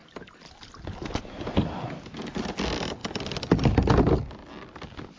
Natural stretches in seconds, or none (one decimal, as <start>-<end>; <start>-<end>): 0.0-5.2